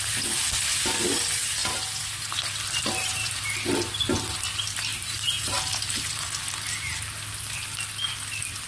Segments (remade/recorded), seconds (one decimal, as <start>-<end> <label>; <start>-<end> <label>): 0.0-4.9 recorded; 4.9-5.5 remade; 5.5-8.7 recorded